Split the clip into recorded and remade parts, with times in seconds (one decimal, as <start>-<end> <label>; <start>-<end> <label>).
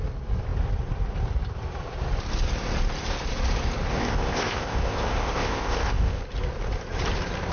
0.0-3.9 recorded; 3.9-6.2 remade; 6.2-7.5 recorded